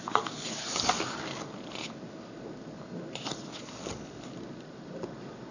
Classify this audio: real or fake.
real